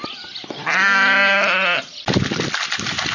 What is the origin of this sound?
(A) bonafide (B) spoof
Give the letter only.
A